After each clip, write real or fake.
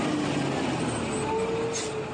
real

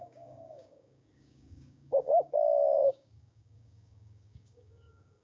fake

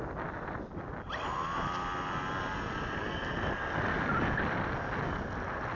real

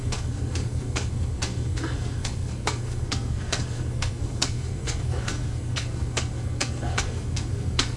fake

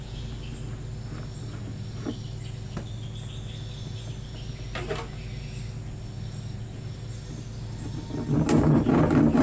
real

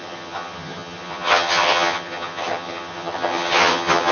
fake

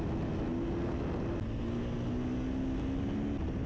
real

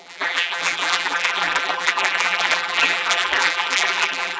fake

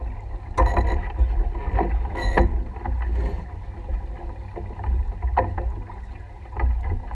real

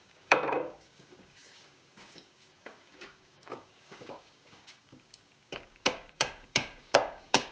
fake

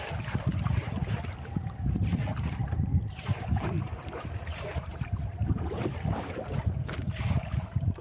fake